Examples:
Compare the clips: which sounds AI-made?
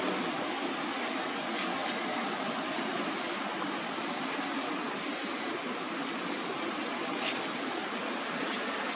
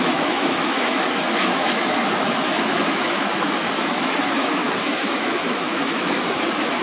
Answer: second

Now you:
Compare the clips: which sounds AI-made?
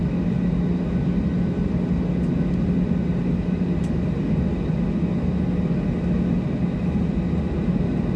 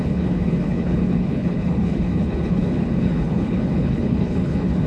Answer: second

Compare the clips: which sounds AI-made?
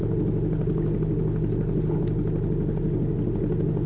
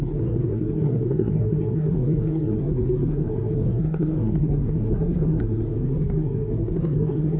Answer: second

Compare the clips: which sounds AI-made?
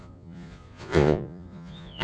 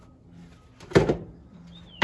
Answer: first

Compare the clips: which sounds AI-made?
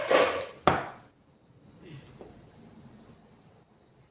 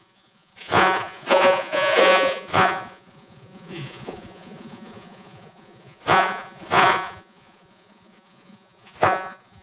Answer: second